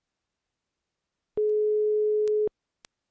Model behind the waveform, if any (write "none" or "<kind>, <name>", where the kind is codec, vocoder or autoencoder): none